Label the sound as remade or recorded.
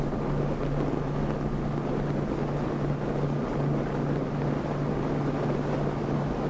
recorded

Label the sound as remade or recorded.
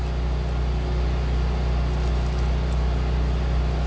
recorded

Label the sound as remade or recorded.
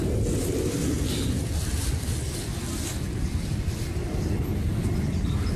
recorded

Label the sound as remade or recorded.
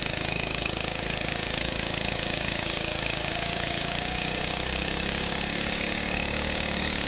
remade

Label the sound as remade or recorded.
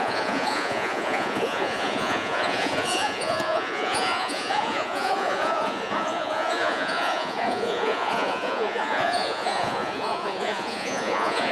remade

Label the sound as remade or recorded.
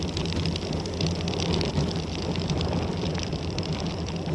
remade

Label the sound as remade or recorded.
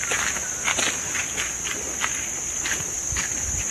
recorded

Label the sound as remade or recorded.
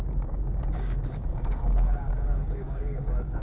remade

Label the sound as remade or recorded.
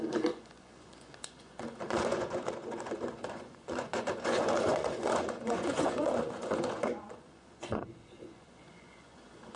remade